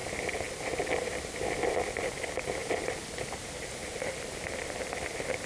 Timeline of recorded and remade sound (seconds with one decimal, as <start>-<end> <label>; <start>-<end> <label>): 0.0-3.8 recorded; 3.8-4.9 remade; 4.9-5.5 recorded